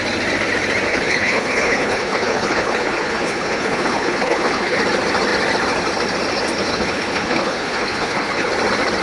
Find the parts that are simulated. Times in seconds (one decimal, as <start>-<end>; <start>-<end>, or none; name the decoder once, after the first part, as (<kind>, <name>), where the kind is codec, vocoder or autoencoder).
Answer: 0.9-4.8 (codec, HILCodec); 6.6-8.5